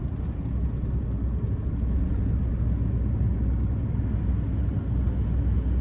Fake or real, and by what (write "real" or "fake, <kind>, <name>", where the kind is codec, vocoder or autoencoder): real